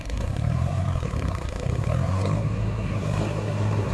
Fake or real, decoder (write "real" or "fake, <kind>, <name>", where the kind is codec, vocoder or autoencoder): fake, codec, SNAC